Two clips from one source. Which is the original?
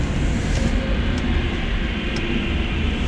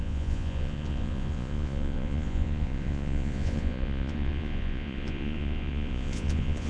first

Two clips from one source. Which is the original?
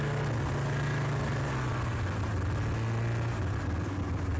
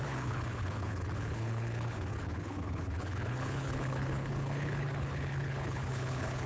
first